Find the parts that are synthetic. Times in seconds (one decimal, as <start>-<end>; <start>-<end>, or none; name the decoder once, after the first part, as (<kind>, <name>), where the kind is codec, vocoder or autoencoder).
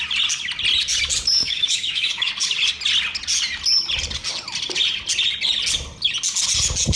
1.4-2.3 (autoencoder, DAC-VAE)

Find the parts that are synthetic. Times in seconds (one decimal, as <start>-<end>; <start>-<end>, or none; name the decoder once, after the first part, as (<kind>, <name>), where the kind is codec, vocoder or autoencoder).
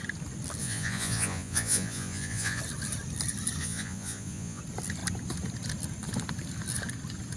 0.6-2.6 (vocoder, Vocos); 3.6-4.6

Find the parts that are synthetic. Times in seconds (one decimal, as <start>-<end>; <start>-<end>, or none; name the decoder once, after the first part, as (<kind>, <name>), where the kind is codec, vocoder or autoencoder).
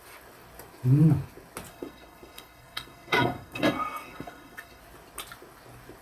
1.7-4.8 (codec, SNAC)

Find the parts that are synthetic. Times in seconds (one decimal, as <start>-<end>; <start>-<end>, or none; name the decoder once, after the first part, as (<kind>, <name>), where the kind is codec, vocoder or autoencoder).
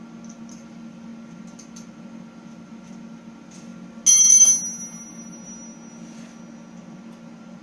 none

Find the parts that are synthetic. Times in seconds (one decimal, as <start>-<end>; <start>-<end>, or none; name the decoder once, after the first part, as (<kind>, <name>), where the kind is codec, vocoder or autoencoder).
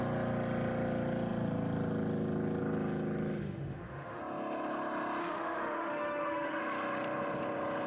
3.4-4.2 (autoencoder, DAC-VAE); 5.2-6.6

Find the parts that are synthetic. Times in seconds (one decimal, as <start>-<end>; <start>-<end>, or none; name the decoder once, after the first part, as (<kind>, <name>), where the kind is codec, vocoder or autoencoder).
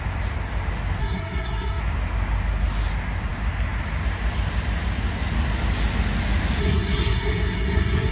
1.0-1.8 (codec, SNAC); 6.6-8.1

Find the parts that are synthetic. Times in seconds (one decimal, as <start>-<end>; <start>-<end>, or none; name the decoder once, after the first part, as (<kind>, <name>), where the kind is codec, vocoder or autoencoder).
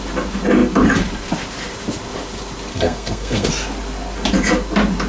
2.7-3.5 (codec, SNAC)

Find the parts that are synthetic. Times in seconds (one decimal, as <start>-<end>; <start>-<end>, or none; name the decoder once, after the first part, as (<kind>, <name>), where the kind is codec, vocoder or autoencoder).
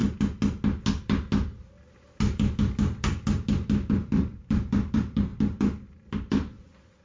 3.9-7.0 (vocoder, BigVGAN v2)